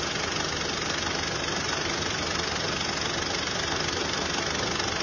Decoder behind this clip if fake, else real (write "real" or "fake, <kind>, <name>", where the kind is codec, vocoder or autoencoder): real